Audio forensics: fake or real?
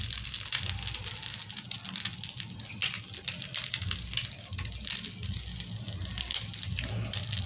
real